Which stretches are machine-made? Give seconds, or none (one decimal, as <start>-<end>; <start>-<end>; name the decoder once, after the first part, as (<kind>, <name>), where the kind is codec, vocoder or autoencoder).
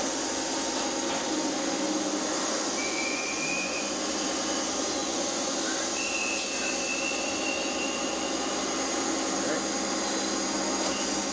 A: 2.8-3.9 (vocoder, Vocos); 5.0-5.6